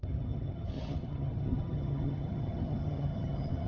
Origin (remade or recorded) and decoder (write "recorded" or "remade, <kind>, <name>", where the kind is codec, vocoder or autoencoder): remade, vocoder, HiFi-GAN